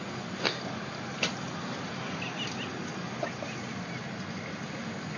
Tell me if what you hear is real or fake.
real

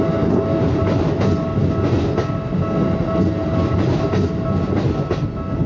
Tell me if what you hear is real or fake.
real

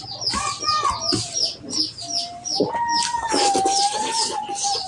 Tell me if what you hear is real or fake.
real